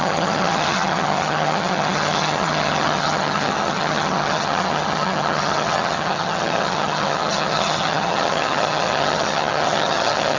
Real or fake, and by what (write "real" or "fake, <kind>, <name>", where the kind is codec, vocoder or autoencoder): fake, vocoder, HiFi-GAN